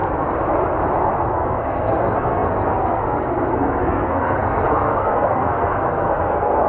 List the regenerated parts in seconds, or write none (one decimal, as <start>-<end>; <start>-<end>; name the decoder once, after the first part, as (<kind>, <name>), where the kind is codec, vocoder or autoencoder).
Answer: 1.3-6.7 (codec, SNAC)